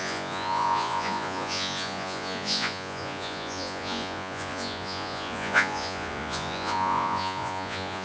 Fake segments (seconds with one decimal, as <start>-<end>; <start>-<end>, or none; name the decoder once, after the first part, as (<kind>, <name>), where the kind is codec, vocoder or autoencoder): 0.0-8.0 (vocoder, Vocos)